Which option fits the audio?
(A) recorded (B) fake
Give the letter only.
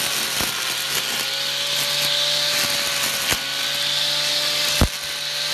A